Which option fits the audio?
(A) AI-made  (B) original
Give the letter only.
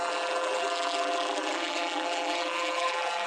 A